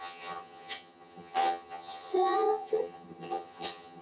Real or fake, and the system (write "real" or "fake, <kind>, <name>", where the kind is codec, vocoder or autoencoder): fake, vocoder, HiFi-GAN